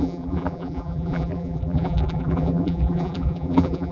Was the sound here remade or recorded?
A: remade